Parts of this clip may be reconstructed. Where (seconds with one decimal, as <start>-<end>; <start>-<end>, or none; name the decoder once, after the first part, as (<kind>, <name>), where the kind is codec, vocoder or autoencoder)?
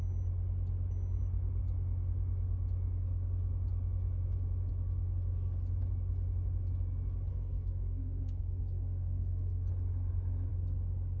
7.3-9.7 (codec, SNAC)